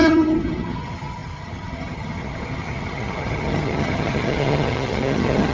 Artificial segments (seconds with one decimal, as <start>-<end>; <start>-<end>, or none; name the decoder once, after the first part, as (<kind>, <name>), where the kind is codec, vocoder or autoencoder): 0.0-5.5 (vocoder, HiFi-GAN)